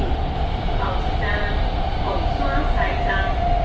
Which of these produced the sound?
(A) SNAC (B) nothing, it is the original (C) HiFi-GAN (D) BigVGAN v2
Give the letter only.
B